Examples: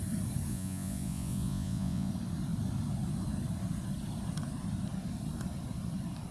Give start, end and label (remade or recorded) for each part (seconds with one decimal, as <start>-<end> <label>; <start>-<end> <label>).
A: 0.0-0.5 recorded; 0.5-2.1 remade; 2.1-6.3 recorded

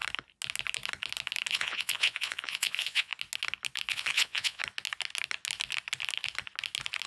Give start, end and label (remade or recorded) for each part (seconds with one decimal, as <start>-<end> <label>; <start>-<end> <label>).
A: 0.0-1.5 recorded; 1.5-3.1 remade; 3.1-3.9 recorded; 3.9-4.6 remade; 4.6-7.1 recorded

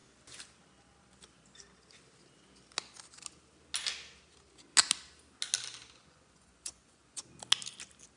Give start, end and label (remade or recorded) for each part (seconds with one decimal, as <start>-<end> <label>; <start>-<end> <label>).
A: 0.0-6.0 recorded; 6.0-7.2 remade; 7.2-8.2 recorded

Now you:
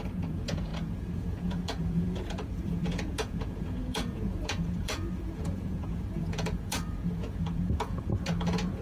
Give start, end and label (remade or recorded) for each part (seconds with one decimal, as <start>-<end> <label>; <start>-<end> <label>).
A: 0.0-8.8 remade